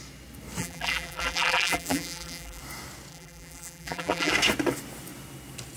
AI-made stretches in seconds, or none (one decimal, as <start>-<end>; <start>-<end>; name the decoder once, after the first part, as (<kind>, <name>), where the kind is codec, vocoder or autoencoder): 0.6-2.6 (vocoder, BigVGAN v2); 3.1-4.3